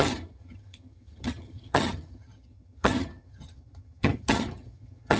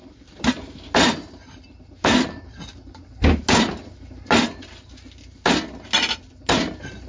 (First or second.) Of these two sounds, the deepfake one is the first